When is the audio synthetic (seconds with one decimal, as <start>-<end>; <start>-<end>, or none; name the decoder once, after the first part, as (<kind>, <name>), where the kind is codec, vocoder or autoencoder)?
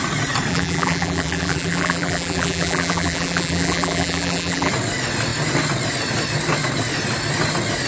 0.5-4.7 (vocoder, BigVGAN v2)